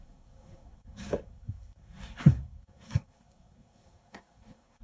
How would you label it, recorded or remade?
remade